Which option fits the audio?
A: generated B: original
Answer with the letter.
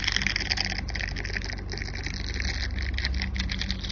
B